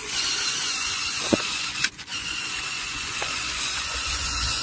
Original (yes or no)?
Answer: no